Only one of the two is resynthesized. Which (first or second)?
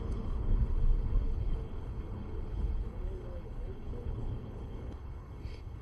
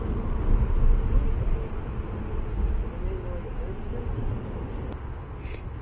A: first